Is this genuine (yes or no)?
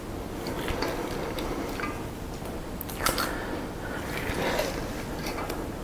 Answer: yes